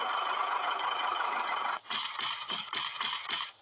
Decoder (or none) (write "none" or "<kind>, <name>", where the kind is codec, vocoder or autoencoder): vocoder, Vocos